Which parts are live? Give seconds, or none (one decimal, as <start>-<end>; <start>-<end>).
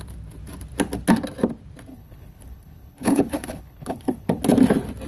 0.0-1.9; 4.4-5.1